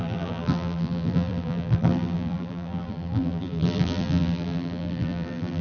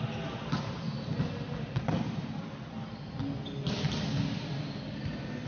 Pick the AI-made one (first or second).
first